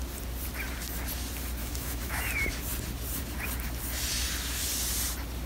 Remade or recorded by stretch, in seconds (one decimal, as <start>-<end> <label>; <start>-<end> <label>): 0.0-1.6 recorded; 1.6-2.2 remade; 2.2-5.5 recorded